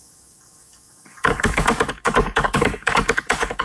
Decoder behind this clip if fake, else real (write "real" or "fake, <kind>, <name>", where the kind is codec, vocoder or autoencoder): fake, codec, DAC